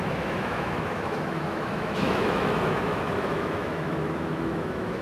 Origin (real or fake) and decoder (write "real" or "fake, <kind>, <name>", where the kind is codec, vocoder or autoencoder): fake, autoencoder, DAC-VAE